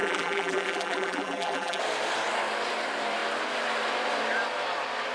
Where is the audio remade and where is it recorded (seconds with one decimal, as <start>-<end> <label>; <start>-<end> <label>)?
0.0-1.8 remade; 1.8-5.1 recorded